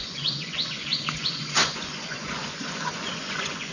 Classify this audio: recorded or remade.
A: remade